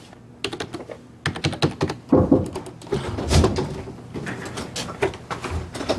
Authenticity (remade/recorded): recorded